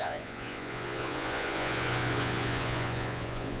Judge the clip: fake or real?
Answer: fake